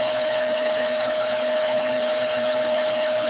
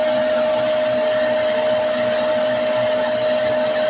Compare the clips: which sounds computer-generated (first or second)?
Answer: first